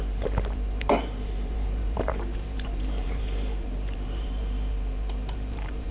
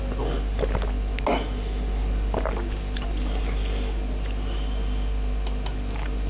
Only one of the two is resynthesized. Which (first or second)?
first